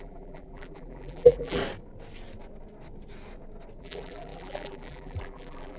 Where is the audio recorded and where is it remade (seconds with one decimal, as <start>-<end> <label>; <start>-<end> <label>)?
0.0-1.6 remade; 1.6-3.8 recorded; 3.8-5.8 remade